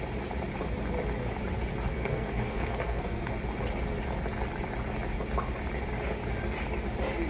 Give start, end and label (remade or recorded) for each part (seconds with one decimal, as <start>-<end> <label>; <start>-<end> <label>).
0.0-1.9 recorded; 1.9-3.3 remade; 3.3-7.3 recorded